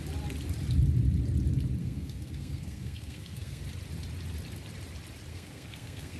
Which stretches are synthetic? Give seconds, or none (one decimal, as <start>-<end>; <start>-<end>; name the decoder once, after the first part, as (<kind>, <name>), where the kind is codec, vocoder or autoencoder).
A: 1.8-3.6 (codec, SNAC); 5.3-6.2